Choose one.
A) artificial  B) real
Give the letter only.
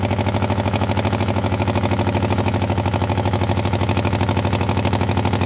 A